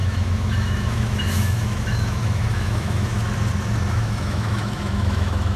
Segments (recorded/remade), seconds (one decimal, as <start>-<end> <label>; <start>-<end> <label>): 0.0-3.2 remade; 3.2-3.9 recorded; 3.9-5.6 remade